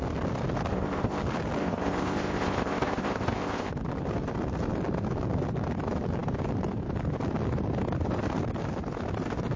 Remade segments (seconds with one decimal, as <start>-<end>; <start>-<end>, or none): 0.7-1.2; 1.6-3.7